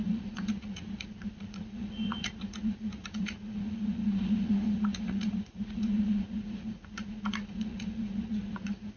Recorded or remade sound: remade